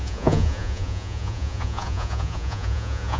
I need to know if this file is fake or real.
fake